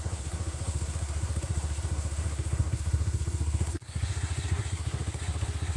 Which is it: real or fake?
fake